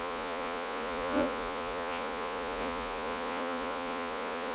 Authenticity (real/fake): fake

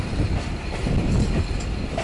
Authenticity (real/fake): real